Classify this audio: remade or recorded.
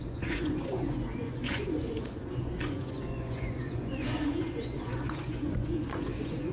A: remade